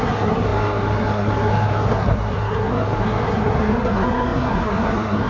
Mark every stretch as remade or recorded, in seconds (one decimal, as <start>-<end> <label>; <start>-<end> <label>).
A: 0.0-5.3 remade